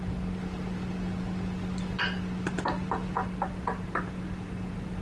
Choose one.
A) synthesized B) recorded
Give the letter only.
B